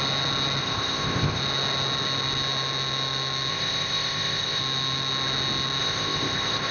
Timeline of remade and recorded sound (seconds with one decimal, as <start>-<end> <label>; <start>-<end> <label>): 0.0-0.6 recorded; 0.6-1.4 remade; 1.4-3.5 recorded; 3.5-4.6 remade; 4.6-5.8 recorded; 5.8-6.7 remade